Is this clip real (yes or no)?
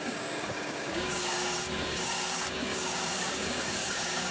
no